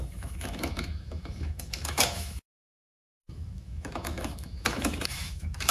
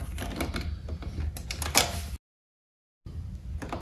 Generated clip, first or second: first